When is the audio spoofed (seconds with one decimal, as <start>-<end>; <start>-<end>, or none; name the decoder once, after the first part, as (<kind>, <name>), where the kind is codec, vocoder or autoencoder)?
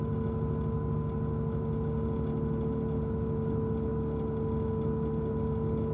none